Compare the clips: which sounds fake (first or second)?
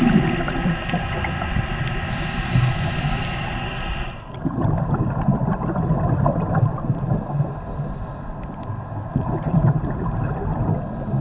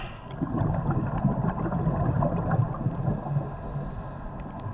first